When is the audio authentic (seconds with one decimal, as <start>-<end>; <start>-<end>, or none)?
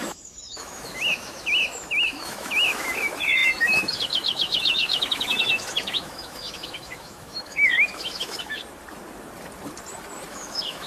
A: 8.6-10.3